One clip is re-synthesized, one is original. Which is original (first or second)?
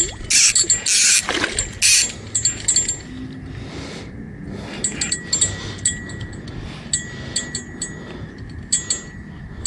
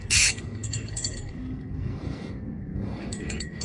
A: first